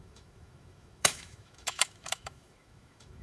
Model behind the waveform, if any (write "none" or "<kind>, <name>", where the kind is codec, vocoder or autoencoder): autoencoder, DAC-VAE